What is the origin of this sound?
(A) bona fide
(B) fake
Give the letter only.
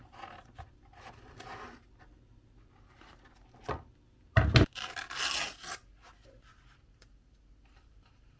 A